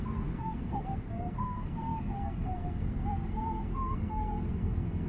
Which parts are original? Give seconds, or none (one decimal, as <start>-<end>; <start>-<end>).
none